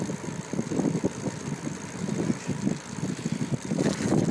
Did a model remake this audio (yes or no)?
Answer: no